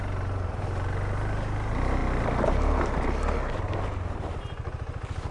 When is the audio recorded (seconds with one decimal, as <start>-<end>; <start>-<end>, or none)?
0.0-5.3